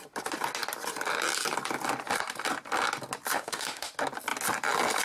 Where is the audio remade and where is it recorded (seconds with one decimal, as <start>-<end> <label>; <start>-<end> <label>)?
0.0-3.3 recorded; 3.3-3.9 remade; 3.9-5.0 recorded